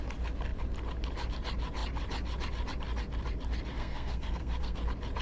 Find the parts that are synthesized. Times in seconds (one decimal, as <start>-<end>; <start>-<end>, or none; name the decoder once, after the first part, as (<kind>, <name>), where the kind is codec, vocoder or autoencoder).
3.7-4.8 (codec, SNAC)